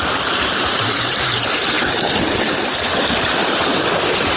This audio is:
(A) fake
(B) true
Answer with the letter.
B